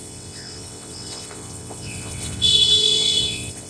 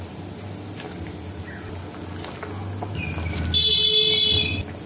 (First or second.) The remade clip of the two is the first